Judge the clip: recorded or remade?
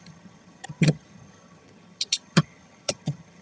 remade